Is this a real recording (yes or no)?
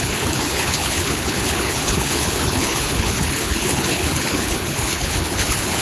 no